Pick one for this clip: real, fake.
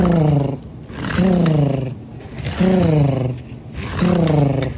real